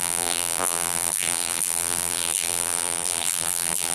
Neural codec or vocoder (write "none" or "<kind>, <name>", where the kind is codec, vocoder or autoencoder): vocoder, BigVGAN v2